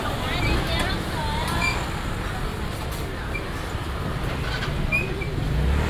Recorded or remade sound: recorded